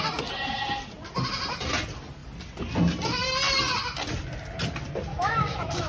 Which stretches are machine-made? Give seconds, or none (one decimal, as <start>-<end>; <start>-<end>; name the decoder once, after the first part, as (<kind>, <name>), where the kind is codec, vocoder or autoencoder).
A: 5.1-5.9 (autoencoder, DAC-VAE)